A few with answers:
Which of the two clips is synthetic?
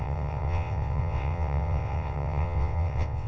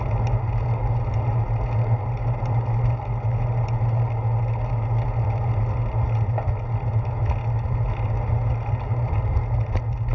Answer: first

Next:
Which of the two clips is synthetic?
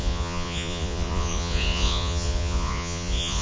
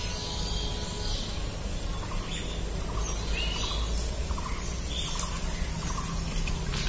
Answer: first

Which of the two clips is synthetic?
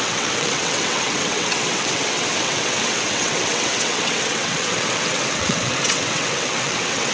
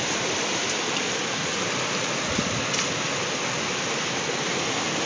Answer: first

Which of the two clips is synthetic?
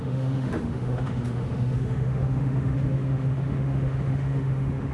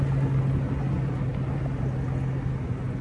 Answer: first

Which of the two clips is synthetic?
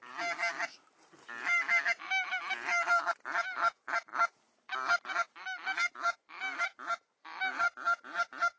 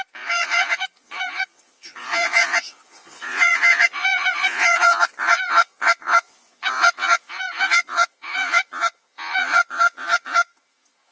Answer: second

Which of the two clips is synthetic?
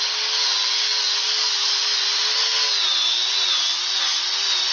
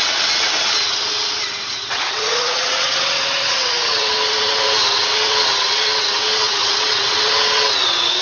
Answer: second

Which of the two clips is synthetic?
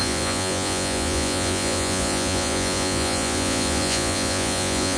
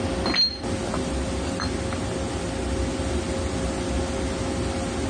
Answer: first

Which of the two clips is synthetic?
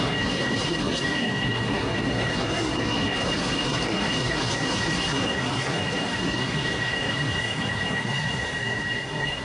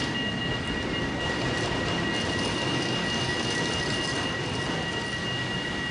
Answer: first